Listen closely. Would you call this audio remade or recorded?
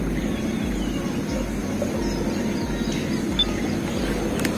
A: recorded